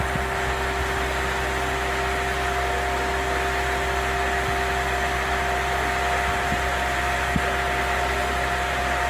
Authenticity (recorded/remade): recorded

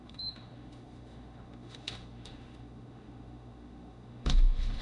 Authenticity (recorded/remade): remade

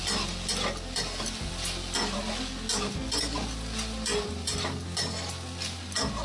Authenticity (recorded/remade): recorded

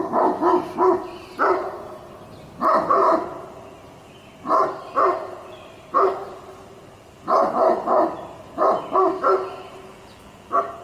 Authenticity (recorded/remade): recorded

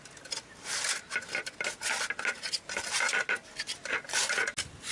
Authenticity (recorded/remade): recorded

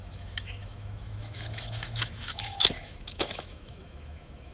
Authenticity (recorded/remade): remade